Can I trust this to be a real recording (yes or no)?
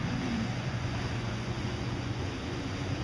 no